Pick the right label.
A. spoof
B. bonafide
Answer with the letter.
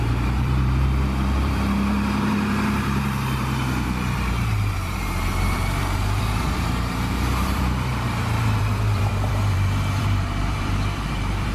A